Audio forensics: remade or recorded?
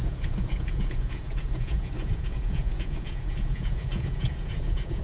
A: remade